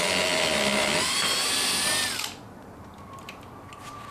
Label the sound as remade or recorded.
recorded